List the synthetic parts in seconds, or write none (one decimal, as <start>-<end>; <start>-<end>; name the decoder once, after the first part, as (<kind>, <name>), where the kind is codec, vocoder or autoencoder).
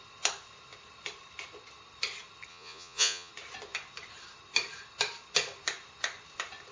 2.5-3.3 (vocoder, Vocos)